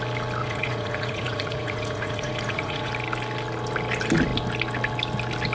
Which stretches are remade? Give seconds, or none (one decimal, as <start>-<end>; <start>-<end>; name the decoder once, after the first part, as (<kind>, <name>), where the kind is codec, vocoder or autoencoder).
0.4-2.9 (vocoder, Vocos)